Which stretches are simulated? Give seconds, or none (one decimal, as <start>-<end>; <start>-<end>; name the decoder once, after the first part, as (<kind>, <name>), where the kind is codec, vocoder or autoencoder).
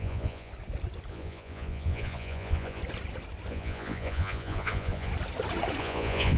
0.0-0.5 (vocoder, Vocos); 1.1-2.8; 3.5-5.1; 5.8-6.4